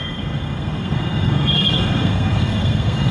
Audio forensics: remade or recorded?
remade